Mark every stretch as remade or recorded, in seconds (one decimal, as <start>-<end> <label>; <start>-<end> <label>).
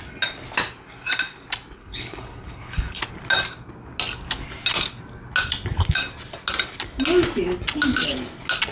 0.0-1.8 recorded; 1.8-3.0 remade; 3.0-8.7 recorded